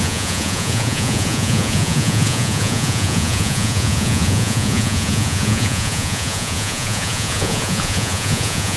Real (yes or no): no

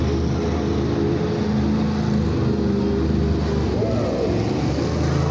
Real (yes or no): yes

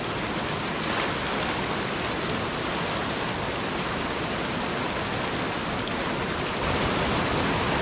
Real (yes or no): yes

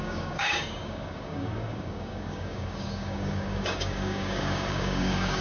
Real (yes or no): no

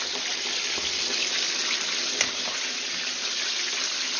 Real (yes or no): yes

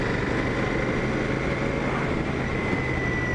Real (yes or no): yes